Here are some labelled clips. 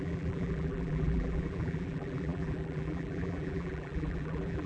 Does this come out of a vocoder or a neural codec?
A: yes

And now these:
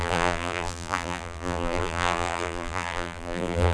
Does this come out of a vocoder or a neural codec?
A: yes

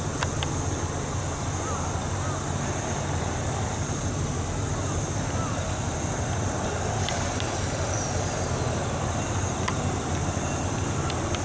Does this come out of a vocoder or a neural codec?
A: no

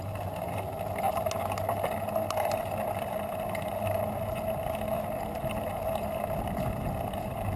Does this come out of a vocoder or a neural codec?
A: no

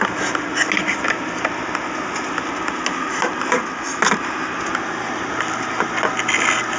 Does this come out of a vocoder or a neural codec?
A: no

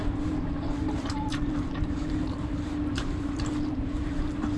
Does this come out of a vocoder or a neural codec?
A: yes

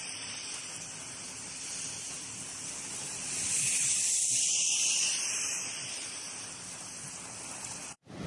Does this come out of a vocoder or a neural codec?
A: yes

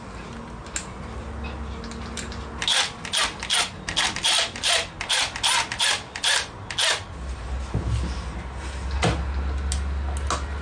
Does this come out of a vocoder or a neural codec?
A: no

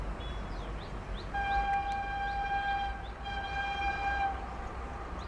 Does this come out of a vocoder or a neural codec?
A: no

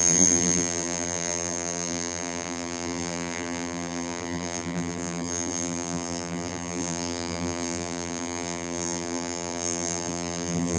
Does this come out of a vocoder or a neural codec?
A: yes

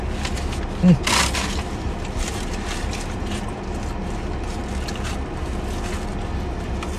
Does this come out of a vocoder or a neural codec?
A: no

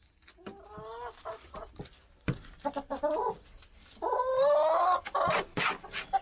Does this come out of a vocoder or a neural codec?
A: no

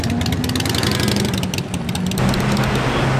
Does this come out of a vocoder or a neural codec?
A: no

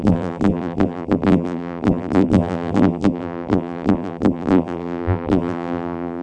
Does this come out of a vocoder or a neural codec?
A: yes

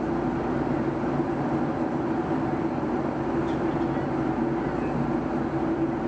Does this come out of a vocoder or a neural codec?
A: no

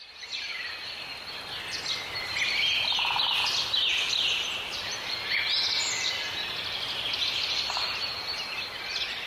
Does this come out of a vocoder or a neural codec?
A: no